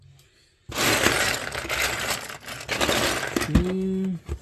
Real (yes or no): yes